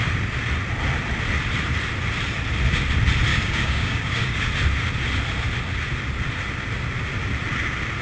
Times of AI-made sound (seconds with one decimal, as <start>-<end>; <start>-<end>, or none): 3.3-4.5